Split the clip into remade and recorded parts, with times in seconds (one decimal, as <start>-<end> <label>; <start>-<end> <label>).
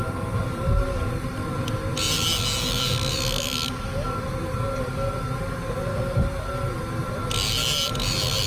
0.0-8.5 recorded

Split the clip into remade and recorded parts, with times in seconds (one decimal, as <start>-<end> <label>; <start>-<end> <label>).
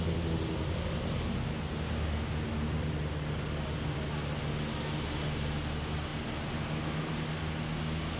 0.0-8.2 recorded